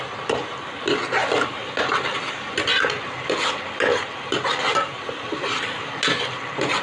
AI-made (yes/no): no